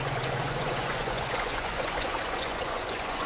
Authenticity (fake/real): fake